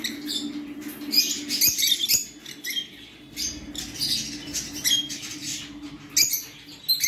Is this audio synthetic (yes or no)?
no